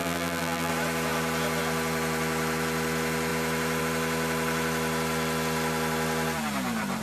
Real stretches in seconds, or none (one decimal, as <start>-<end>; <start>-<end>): 0.7-7.0